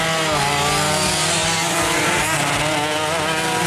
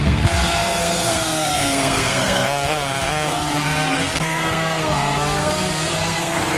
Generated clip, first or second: second